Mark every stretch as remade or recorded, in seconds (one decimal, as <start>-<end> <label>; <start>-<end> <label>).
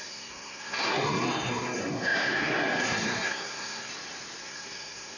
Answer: 0.0-3.9 remade; 3.9-4.4 recorded; 4.4-5.2 remade